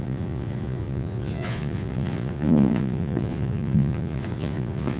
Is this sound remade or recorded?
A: remade